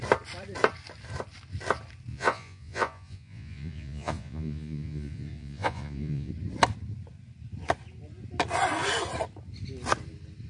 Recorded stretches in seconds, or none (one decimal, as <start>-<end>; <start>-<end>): 0.0-2.1; 6.3-10.5